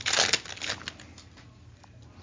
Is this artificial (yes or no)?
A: no